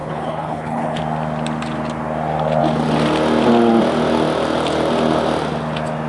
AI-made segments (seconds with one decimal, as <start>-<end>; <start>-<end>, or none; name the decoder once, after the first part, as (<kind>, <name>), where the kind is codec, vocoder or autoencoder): 0.0-1.0 (codec, HILCodec)